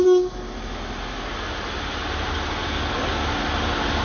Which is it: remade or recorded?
recorded